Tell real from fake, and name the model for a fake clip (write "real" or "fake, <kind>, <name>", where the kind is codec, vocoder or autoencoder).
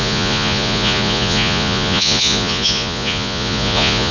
fake, vocoder, Vocos